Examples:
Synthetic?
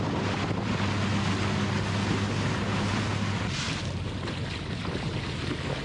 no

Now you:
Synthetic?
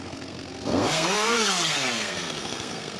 yes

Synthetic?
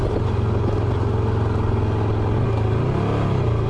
no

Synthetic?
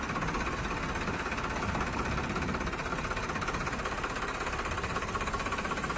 no